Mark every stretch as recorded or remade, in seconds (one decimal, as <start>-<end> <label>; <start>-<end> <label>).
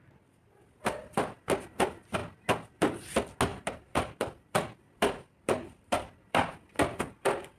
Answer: 0.0-1.0 recorded; 1.0-1.6 remade; 1.6-3.5 recorded; 3.5-6.5 remade; 6.5-7.6 recorded